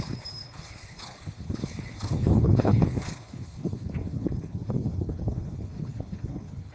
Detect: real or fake fake